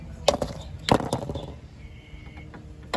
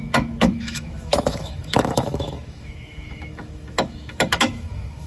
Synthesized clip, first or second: second